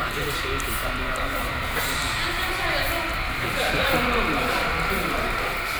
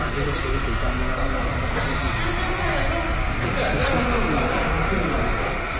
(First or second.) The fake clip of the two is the first